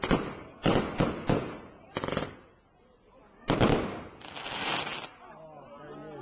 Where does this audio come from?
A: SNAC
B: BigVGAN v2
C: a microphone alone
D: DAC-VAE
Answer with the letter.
C